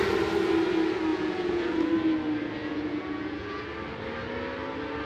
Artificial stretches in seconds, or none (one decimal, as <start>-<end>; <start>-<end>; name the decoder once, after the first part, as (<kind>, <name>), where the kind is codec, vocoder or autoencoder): 1.1-1.9 (vocoder, Vocos); 2.6-3.6